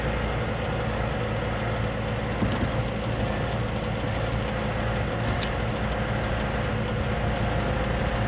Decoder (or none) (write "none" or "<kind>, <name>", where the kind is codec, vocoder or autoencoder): none